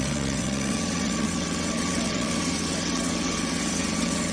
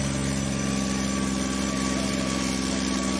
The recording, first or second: second